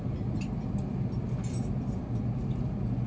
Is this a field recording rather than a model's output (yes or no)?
yes